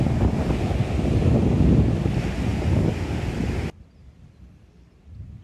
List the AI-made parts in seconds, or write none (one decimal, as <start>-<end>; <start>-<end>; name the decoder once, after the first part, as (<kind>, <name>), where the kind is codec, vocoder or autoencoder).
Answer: none